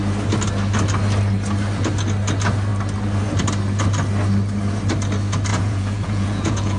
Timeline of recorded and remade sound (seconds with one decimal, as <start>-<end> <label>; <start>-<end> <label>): 0.0-5.5 recorded; 5.5-6.8 remade